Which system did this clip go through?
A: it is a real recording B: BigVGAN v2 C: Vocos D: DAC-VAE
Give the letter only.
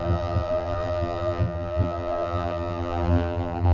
B